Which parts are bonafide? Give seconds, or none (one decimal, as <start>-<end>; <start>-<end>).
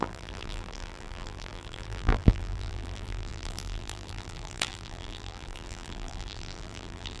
none